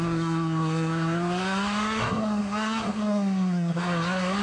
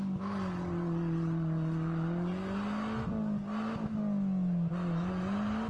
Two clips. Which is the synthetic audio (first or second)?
first